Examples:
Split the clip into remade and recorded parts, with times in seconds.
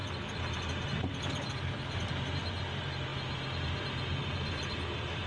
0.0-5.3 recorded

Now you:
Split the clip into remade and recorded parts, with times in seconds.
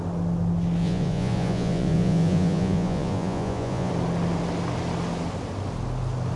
0.0-0.8 recorded; 0.8-3.9 remade; 3.9-6.4 recorded